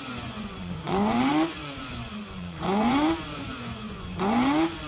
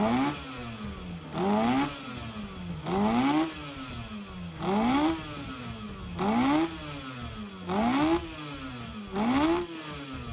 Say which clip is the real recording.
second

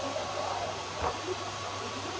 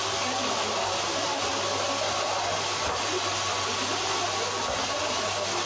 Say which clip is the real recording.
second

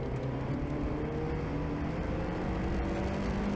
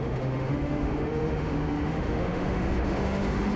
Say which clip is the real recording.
first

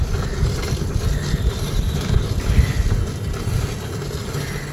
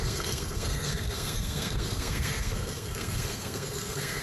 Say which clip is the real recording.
first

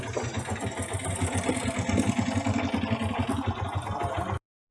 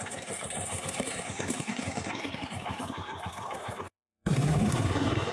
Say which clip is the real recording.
first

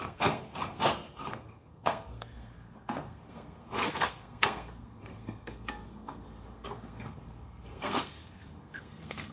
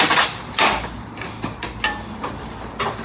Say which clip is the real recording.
second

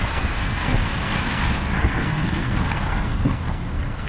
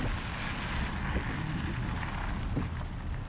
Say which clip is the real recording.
second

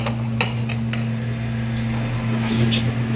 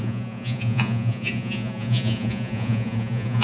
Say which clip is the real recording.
first